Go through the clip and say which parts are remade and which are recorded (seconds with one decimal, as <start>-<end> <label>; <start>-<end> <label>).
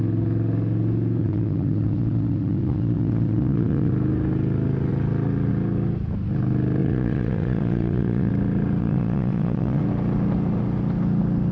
0.0-1.2 recorded; 1.2-3.9 remade; 3.9-6.8 recorded; 6.8-8.3 remade; 8.3-8.8 recorded; 8.8-9.8 remade; 9.8-11.5 recorded